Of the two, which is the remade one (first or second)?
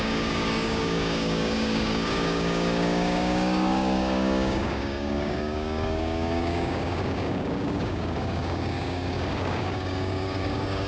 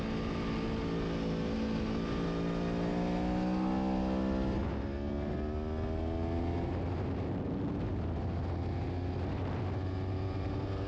first